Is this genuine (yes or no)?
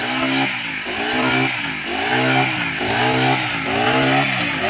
yes